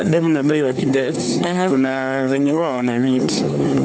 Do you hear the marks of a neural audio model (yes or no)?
yes